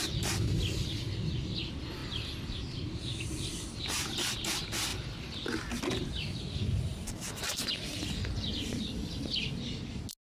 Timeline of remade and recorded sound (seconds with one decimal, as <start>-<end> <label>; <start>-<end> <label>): 0.0-2.0 recorded; 2.0-3.8 remade; 3.8-4.9 recorded; 4.9-6.4 remade; 6.4-6.9 recorded; 6.9-8.5 remade; 8.5-10.2 recorded